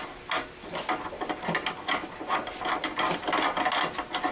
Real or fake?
real